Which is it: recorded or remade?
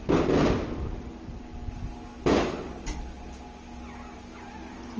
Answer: recorded